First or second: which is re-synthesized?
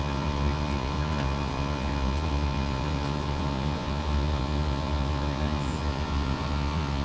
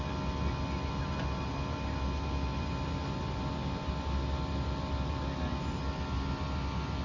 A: first